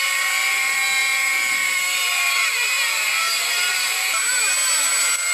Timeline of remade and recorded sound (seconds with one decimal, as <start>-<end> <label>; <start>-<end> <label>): 0.0-5.3 recorded

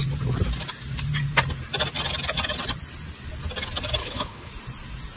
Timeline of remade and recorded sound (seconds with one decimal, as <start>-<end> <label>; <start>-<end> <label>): 0.0-4.0 recorded; 4.0-4.5 remade; 4.5-5.2 recorded

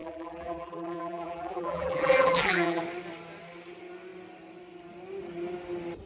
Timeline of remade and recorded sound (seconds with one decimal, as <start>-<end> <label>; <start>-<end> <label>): 0.0-2.8 remade; 2.8-6.1 recorded

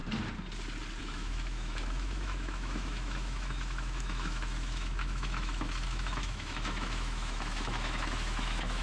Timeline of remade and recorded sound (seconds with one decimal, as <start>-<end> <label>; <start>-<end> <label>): 0.0-1.0 recorded; 1.0-8.8 remade

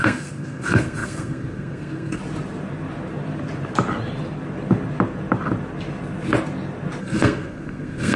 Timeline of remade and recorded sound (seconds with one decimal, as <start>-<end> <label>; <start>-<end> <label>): 0.0-2.2 remade; 2.2-7.0 recorded; 7.0-8.2 remade